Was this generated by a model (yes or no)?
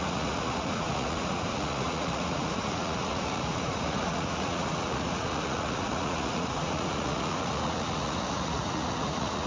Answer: yes